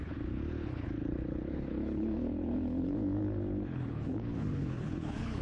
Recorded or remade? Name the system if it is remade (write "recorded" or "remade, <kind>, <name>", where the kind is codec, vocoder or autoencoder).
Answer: remade, codec, HILCodec